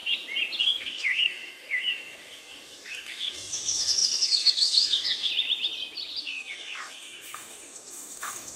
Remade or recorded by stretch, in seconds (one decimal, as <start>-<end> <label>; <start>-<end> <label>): 0.0-0.6 recorded; 0.6-5.3 remade; 5.3-6.2 recorded; 6.2-8.6 remade